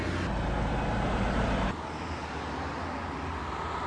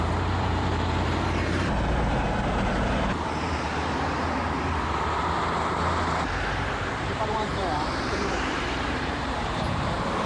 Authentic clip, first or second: first